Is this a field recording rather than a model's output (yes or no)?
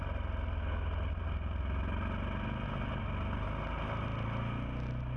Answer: yes